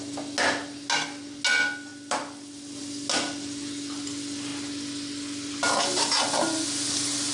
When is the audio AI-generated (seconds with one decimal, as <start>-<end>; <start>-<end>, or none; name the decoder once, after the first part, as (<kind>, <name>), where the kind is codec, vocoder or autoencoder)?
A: none